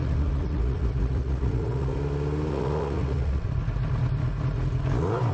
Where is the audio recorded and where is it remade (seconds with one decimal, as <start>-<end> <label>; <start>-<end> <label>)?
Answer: 0.0-1.9 remade; 1.9-2.5 recorded; 2.5-3.6 remade; 3.6-5.3 recorded